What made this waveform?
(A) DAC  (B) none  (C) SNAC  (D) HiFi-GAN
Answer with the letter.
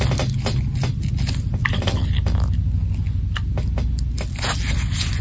B